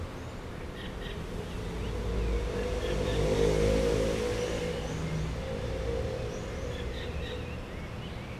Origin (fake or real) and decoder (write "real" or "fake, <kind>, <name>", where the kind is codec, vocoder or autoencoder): real